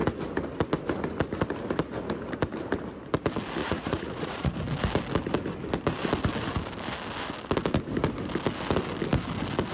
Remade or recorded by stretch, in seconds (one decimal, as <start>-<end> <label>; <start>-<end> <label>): 0.0-3.6 recorded; 3.6-4.5 remade; 4.5-9.7 recorded